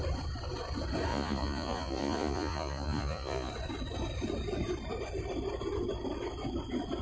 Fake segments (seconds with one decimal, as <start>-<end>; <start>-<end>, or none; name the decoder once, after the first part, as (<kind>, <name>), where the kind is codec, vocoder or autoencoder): 1.1-3.5 (vocoder, Vocos)